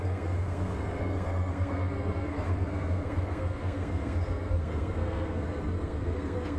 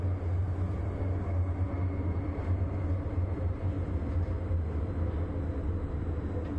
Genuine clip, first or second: second